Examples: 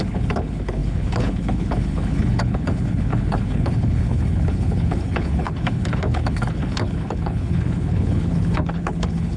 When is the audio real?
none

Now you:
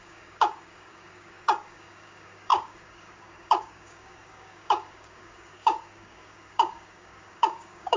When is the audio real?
none

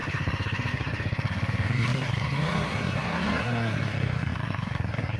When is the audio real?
none